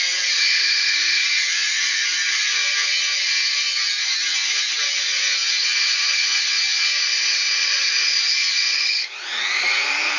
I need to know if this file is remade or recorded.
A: remade